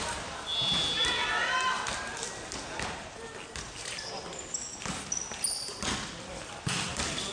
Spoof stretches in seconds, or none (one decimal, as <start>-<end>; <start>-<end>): none